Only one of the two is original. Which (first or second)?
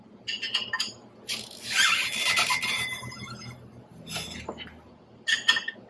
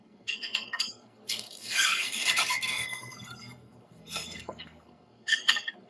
first